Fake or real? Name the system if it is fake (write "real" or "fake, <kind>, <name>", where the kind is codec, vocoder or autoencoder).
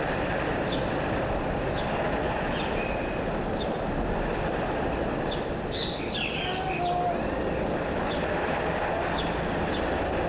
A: real